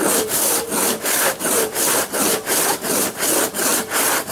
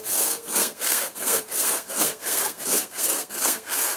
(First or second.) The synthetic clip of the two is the second